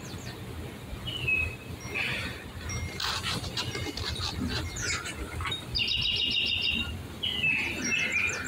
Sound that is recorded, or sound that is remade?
recorded